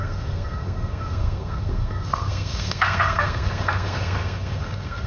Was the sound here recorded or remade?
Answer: remade